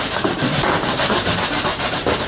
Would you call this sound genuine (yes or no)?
no